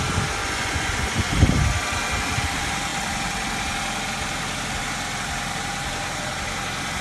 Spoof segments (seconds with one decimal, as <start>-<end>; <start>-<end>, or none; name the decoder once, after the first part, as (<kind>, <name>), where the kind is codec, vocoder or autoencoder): 0.4-1.3 (vocoder, Vocos)